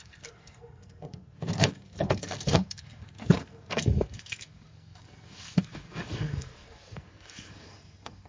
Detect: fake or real fake